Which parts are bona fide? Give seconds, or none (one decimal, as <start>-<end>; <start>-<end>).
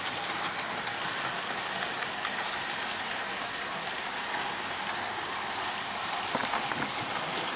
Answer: 0.0-7.6